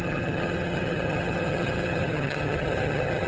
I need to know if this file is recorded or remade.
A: remade